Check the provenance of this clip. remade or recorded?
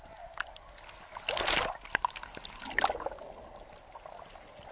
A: recorded